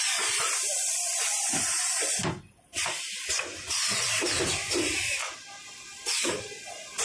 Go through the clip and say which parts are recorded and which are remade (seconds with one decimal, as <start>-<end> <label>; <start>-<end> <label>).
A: 0.0-1.7 remade; 1.7-2.2 recorded; 2.2-7.0 remade